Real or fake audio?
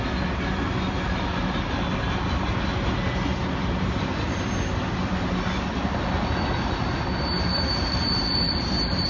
real